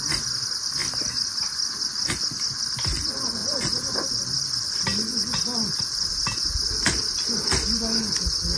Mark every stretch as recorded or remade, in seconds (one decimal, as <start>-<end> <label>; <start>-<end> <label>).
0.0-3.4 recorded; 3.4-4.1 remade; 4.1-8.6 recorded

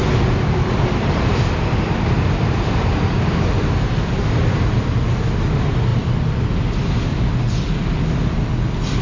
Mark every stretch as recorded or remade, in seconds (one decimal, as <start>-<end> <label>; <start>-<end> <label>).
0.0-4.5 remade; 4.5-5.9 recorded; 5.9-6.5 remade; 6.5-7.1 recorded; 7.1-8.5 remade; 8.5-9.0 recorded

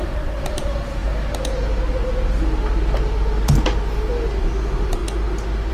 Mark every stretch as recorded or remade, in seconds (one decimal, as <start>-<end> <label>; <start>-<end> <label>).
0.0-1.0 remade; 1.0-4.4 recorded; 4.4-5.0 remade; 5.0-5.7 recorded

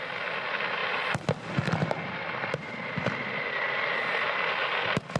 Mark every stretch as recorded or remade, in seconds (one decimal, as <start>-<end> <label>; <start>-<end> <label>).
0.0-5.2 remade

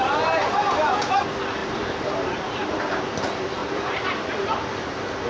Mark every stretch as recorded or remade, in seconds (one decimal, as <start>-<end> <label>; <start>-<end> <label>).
0.0-1.6 recorded; 1.6-3.0 remade; 3.0-3.6 recorded; 3.6-4.8 remade; 4.8-5.3 recorded

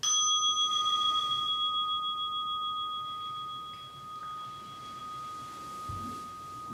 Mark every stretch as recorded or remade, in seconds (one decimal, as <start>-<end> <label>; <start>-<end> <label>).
0.0-0.7 recorded; 0.7-1.5 remade; 1.5-6.7 recorded

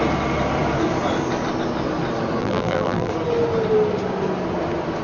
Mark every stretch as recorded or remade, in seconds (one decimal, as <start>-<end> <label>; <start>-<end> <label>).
0.0-2.4 recorded; 2.4-3.1 remade; 3.1-5.0 recorded

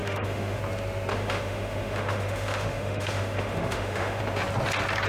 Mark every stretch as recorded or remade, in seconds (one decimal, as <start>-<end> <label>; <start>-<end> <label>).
0.0-0.6 remade; 0.6-1.1 recorded; 1.1-4.2 remade; 4.2-5.1 recorded